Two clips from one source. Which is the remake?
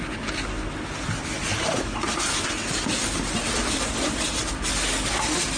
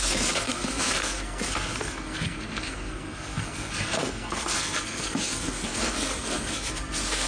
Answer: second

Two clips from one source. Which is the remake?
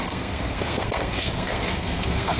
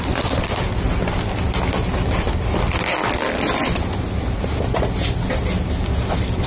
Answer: first